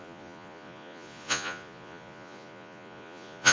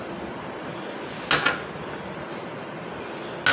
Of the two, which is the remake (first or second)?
first